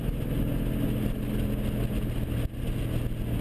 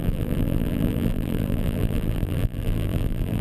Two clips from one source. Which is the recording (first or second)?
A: first